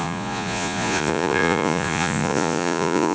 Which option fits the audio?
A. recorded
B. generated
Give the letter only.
B